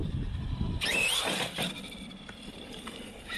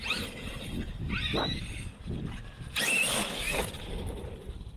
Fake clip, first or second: first